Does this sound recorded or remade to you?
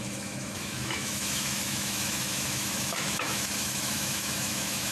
remade